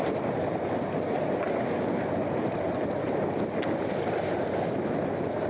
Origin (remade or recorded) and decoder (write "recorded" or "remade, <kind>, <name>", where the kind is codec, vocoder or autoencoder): recorded